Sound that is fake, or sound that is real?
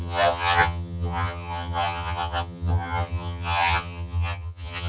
fake